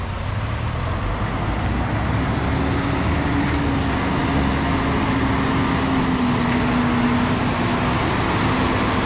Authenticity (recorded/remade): recorded